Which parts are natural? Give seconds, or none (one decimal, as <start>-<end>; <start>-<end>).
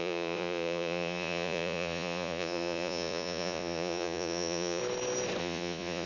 4.8-5.4